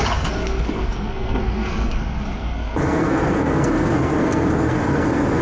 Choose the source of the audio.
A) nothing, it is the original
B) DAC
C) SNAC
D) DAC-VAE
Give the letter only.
C